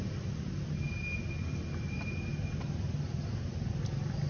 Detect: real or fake real